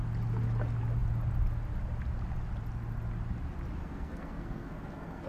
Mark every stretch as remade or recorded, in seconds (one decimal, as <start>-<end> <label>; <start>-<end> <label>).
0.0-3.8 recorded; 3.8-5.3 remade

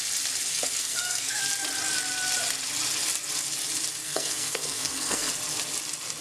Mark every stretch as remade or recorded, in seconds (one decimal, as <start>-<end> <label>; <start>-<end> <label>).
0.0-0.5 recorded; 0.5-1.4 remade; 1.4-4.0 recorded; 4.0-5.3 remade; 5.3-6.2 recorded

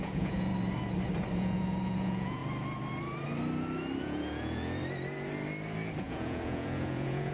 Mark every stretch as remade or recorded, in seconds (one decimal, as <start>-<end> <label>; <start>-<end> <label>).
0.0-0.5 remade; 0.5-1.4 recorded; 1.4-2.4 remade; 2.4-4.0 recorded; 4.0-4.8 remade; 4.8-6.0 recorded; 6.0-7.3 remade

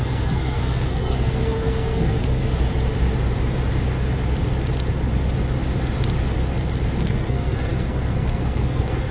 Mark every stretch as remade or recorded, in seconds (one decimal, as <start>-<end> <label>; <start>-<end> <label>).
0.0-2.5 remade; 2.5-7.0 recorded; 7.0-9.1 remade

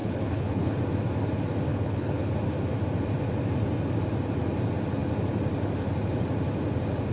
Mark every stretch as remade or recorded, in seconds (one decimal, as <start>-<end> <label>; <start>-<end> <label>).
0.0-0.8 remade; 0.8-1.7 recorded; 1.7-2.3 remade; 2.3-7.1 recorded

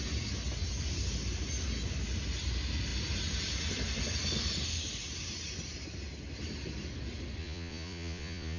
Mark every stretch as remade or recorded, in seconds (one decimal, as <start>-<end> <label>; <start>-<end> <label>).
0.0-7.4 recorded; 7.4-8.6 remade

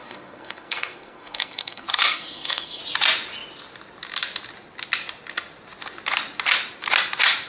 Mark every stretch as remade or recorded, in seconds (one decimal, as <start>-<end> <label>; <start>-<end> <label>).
0.0-2.8 remade; 2.8-7.5 recorded

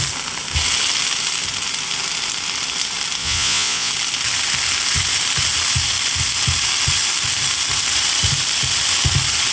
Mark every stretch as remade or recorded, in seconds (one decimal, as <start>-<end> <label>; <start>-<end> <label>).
0.0-3.2 recorded; 3.2-3.9 remade; 3.9-9.5 recorded